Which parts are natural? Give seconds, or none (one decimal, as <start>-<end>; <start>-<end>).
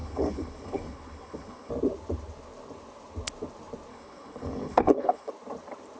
1.7-3.9; 5.3-6.0